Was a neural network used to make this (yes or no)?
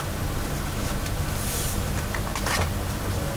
no